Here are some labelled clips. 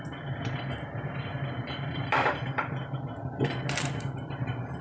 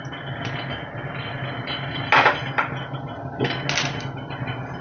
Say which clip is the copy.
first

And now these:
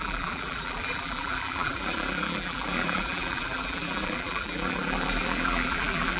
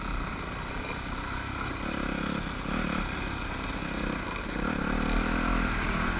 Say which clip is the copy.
first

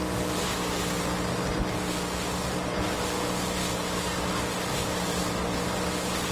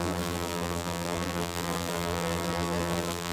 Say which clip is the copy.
second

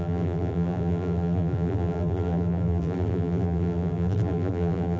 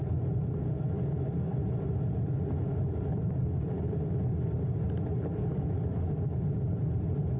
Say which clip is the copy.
first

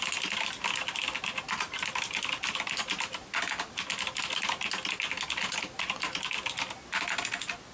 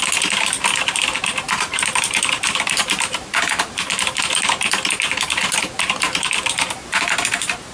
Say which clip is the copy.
second